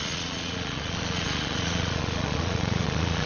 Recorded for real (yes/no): no